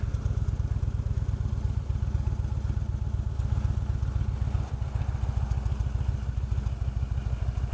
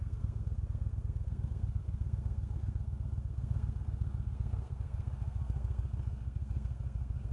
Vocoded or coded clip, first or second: second